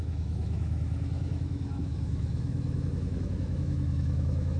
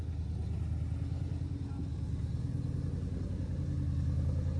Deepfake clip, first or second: first